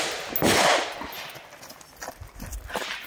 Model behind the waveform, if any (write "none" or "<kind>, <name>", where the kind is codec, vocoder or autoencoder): none